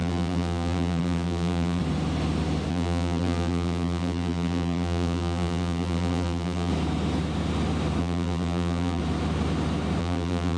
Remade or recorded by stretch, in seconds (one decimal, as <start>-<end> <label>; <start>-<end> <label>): 0.0-1.8 remade; 1.8-2.7 recorded; 2.7-6.7 remade; 6.7-8.0 recorded; 8.0-9.0 remade; 9.0-10.0 recorded; 10.0-10.6 remade